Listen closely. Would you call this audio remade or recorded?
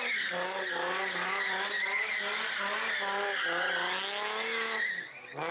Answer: recorded